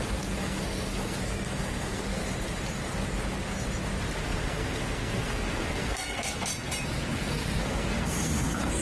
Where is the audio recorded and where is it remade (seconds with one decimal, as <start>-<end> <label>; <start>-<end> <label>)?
0.0-2.2 remade; 2.2-4.2 recorded; 4.2-6.5 remade; 6.5-7.1 recorded; 7.1-8.8 remade